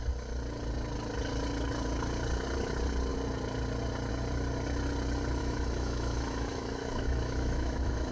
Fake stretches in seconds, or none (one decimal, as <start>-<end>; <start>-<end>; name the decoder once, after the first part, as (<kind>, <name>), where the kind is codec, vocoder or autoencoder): 5.4-8.1 (autoencoder, DAC-VAE)